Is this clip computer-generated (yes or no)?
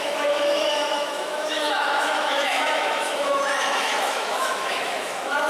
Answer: yes